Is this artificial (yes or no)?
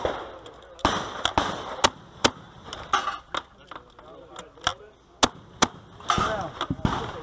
no